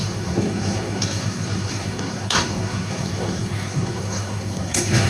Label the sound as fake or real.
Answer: fake